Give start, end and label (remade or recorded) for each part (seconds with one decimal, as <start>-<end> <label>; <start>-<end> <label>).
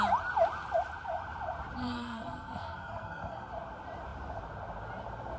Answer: 0.0-1.8 recorded; 1.8-3.5 remade; 3.5-5.4 recorded